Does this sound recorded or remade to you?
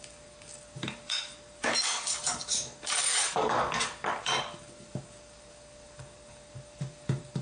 remade